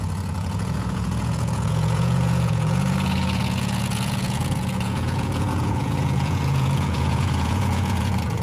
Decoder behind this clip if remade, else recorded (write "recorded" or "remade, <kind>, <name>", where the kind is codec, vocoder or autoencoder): remade, vocoder, Vocos